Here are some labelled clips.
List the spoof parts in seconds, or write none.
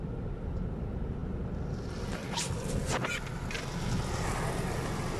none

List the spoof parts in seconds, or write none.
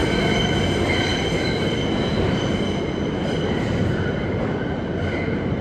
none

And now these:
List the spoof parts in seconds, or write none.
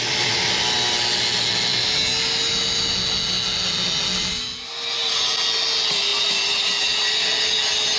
none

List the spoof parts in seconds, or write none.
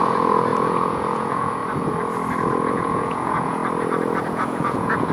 0.0-1.6; 2.7-3.6; 4.2-5.1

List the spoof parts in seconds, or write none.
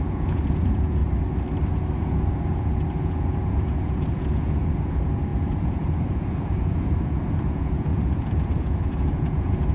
0.0-1.0; 2.0-9.7